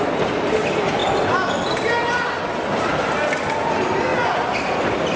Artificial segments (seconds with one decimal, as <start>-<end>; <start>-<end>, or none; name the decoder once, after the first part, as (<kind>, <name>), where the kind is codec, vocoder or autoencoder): none